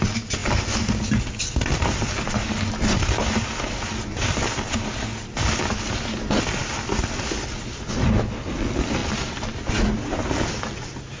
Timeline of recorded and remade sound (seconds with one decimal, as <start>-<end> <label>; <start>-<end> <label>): 0.0-6.6 recorded; 6.6-7.5 remade; 7.5-11.2 recorded